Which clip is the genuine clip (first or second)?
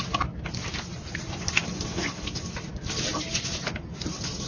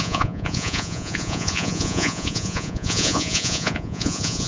first